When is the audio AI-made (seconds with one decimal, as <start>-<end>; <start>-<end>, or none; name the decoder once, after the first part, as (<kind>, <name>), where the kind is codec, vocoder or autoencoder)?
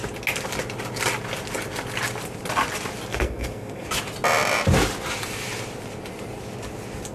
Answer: 3.1-3.9 (codec, SNAC)